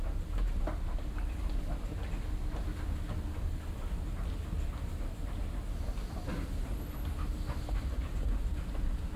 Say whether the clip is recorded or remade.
recorded